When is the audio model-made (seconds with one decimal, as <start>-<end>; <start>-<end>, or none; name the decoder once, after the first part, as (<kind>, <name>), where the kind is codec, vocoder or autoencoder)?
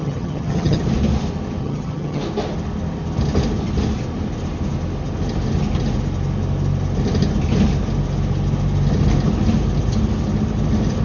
0.0-0.8 (vocoder, HiFi-GAN); 1.6-2.2